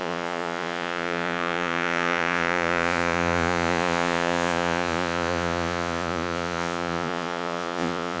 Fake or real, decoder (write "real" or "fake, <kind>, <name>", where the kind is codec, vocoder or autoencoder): fake, vocoder, Vocos